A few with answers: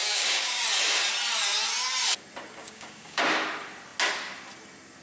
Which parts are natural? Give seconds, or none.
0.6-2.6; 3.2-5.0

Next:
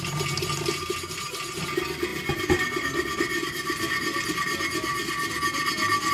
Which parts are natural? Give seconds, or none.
0.0-6.1

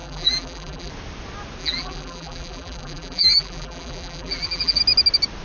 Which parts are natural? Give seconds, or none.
0.9-1.6; 4.8-5.4

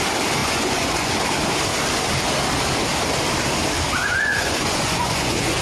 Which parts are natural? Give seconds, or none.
0.0-0.4; 1.1-4.0

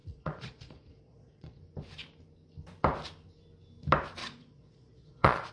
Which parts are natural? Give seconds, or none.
1.6-4.2

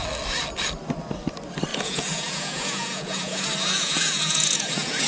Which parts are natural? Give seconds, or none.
0.0-1.7